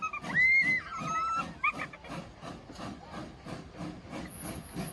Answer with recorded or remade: recorded